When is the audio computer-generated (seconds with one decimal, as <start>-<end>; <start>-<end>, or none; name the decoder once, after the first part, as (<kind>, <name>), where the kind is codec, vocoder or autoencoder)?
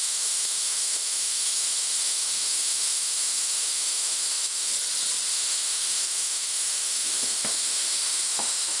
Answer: 0.0-4.7 (autoencoder, DAC-VAE); 5.3-8.8